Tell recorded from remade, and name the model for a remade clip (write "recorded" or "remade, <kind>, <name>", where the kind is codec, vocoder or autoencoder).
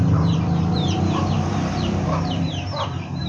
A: remade, vocoder, BigVGAN v2